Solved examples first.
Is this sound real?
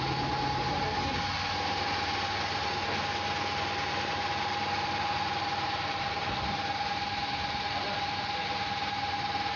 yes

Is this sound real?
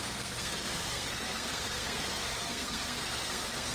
no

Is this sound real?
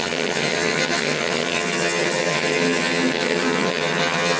no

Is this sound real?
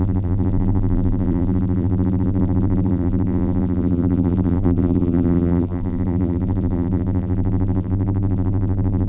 no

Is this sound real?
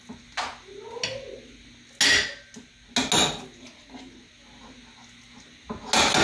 yes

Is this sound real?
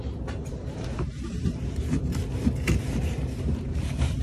no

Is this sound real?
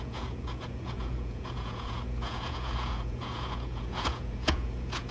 no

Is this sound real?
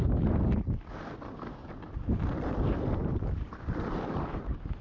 yes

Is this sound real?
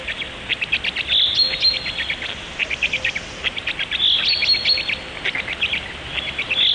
yes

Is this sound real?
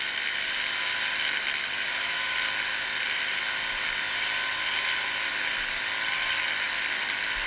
yes